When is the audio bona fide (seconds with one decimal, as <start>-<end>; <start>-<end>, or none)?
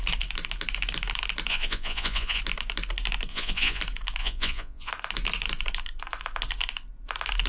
0.0-1.5; 2.4-3.3; 3.8-4.2; 4.9-7.5